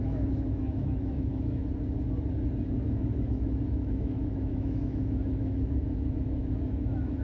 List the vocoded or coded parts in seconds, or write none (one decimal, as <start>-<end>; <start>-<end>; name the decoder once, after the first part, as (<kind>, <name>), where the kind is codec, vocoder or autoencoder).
0.0-1.6 (autoencoder, DAC-VAE); 2.8-7.2